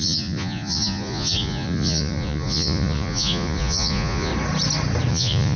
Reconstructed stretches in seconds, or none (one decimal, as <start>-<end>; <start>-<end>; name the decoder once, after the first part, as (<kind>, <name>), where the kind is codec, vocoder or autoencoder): 0.0-4.3 (vocoder, Vocos); 5.1-5.6

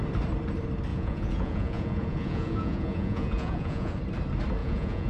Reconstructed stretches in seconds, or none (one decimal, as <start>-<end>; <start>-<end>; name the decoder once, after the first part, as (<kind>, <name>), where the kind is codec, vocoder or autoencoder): 0.9-4.0 (vocoder, Vocos); 4.6-5.1

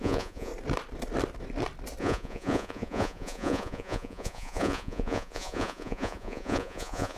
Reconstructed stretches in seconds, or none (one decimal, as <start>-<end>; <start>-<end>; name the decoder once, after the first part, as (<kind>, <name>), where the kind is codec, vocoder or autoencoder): 0.0-0.5 (vocoder, Vocos); 2.0-7.2

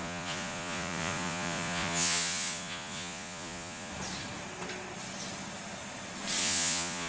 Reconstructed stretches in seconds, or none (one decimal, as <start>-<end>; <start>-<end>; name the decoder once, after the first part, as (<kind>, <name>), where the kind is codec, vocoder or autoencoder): 0.0-3.9 (vocoder, Vocos); 6.4-7.1

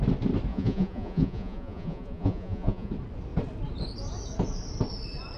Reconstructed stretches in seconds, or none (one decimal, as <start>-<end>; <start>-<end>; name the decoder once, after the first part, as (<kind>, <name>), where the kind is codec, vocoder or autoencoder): 0.5-2.9 (vocoder, Vocos)